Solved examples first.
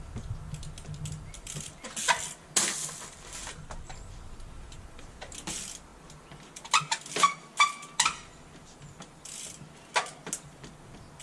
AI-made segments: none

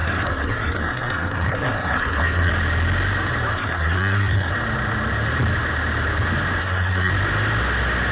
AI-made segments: 0.0-2.5; 3.5-4.5; 6.6-7.1

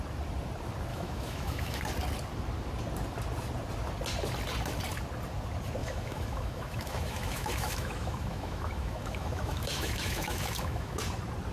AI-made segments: 0.9-1.8; 5.8-11.0